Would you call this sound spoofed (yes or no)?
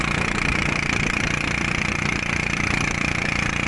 no